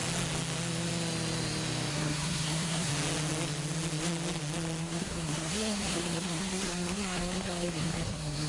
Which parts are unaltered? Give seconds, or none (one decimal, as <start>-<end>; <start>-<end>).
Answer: 0.0-1.9; 2.9-4.8